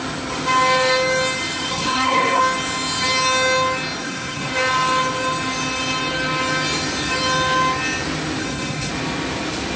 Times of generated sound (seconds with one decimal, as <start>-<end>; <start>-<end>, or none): 1.7-2.4; 4.0-4.5; 8.4-8.9